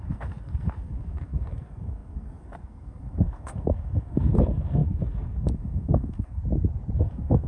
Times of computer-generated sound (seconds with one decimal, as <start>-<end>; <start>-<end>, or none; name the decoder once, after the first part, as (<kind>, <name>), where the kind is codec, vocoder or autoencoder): 0.0-6.4 (codec, SNAC); 7.0-7.5